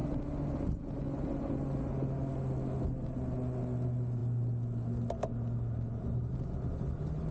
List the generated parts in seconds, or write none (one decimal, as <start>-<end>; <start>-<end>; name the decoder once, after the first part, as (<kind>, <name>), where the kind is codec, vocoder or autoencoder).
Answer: none